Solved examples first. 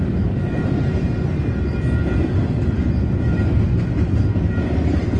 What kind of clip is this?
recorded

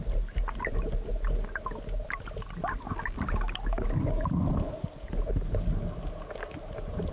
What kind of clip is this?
recorded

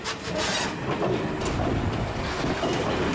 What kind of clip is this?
recorded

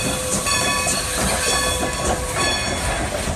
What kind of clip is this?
recorded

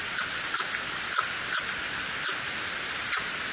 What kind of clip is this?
recorded